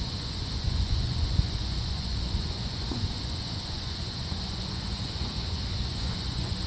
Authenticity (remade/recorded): remade